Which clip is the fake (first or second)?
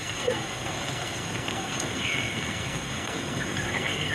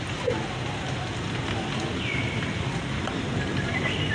first